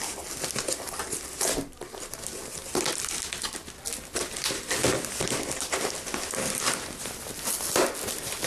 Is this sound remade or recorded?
recorded